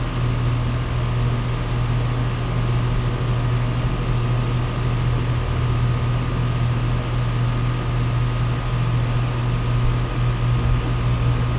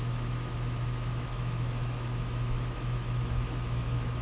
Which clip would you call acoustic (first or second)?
first